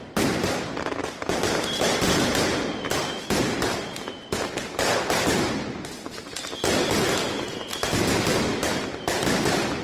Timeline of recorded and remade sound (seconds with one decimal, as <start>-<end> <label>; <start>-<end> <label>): 0.0-2.5 remade; 2.5-3.1 recorded; 3.1-4.1 remade; 4.1-7.1 recorded; 7.1-7.7 remade; 7.7-8.4 recorded; 8.4-9.8 remade